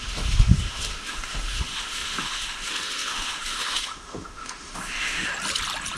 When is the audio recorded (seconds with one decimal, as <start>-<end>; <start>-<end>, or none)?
5.3-6.0